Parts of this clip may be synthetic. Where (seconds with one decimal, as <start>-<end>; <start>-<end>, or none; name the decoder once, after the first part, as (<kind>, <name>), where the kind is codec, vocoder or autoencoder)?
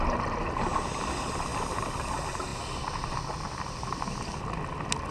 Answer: none